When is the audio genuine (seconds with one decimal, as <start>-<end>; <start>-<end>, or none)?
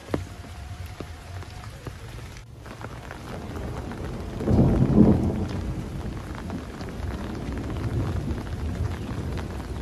2.4-6.7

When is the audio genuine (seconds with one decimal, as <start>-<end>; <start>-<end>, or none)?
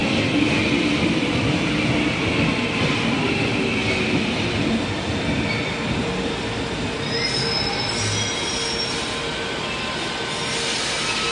0.0-11.3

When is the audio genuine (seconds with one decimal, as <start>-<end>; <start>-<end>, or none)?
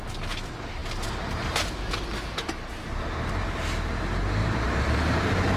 0.0-4.4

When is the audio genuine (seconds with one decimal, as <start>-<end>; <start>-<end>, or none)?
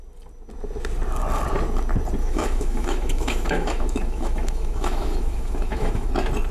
0.0-2.2; 6.1-6.5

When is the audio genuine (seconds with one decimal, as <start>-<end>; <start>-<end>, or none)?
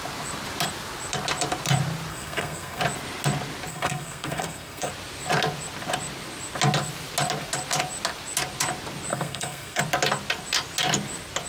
0.0-2.1; 2.8-3.7; 4.9-9.1; 9.8-11.5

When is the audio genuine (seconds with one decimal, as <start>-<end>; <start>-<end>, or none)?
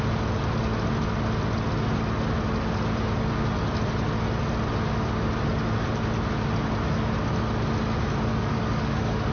0.0-8.3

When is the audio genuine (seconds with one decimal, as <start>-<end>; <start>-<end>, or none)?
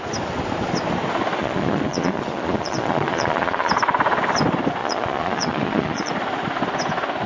0.0-1.4; 3.7-4.8; 6.1-7.3